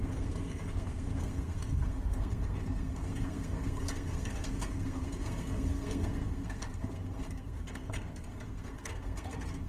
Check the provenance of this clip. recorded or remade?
remade